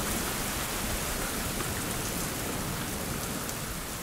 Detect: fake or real real